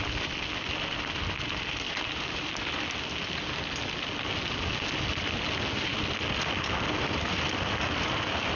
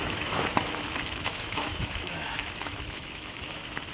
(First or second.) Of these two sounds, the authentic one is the first